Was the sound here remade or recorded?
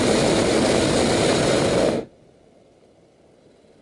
recorded